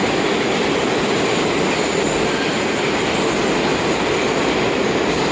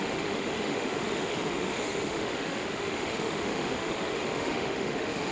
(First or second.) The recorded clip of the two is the first